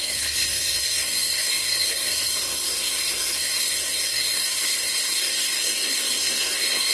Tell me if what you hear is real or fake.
fake